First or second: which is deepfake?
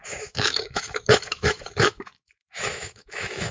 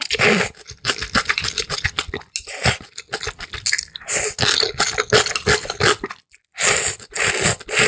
first